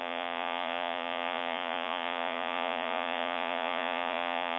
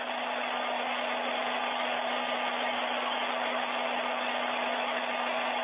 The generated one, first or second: first